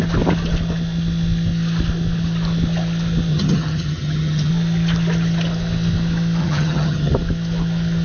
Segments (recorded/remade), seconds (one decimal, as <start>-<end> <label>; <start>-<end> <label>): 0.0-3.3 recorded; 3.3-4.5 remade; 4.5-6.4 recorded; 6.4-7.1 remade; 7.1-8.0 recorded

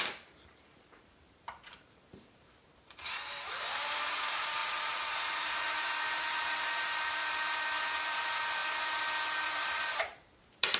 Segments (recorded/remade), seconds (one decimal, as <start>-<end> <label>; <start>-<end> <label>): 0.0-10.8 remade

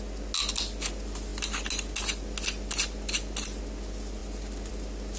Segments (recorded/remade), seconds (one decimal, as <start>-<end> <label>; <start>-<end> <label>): 0.0-5.2 recorded

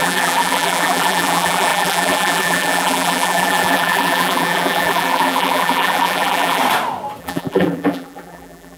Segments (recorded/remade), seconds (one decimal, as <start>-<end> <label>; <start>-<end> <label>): 0.0-6.6 remade; 6.6-7.2 recorded; 7.2-8.8 remade